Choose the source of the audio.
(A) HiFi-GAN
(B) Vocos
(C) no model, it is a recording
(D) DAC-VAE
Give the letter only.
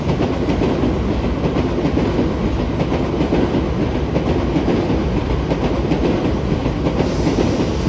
C